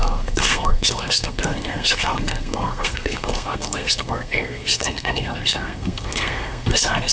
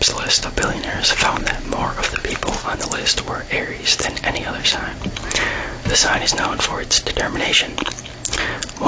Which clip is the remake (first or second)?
first